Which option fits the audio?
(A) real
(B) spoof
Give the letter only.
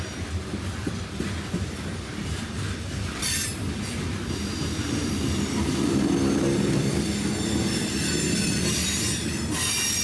A